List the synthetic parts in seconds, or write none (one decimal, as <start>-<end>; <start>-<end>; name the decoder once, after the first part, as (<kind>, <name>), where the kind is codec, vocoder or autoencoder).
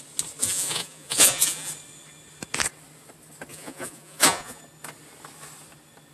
0.4-1.7 (vocoder, Vocos); 3.5-4.6